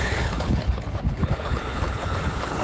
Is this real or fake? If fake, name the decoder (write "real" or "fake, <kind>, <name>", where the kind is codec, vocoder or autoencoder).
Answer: fake, codec, HILCodec